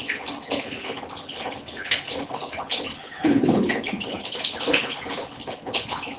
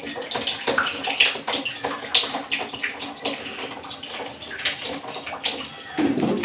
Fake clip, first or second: first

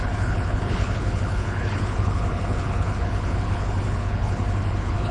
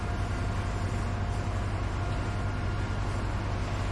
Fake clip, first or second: first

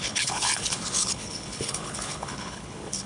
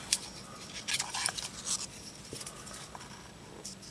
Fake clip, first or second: first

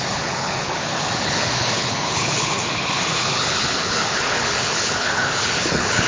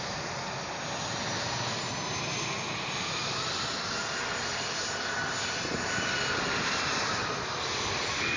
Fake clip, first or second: first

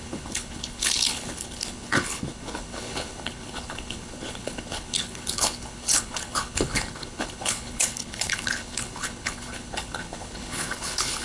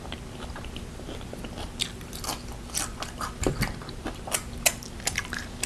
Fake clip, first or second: first